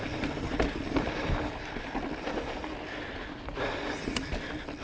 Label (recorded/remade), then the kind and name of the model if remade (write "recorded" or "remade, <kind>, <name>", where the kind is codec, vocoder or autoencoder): recorded